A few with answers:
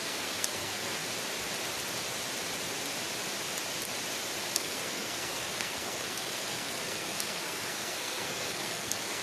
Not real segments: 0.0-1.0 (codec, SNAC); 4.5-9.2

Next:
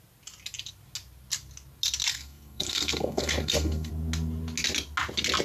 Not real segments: 2.1-3.9 (codec, SNAC)

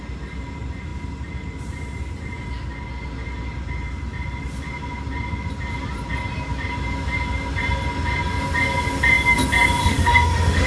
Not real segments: 9.8-10.7 (autoencoder, DAC-VAE)

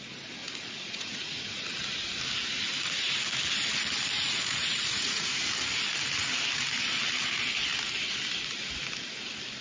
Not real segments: 0.4-1.8 (vocoder, Vocos); 4.2-5.5

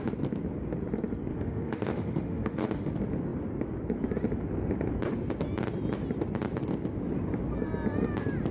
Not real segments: 1.3-2.9 (autoencoder, DAC-VAE)

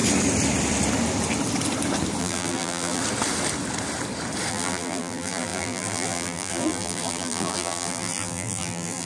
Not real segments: 2.2-3.0 (vocoder, BigVGAN v2); 4.5-9.1

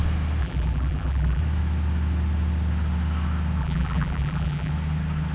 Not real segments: 0.4-1.4 (vocoder, BigVGAN v2); 3.6-4.7